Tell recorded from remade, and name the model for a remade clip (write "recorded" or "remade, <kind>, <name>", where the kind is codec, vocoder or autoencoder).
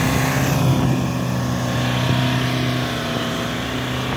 recorded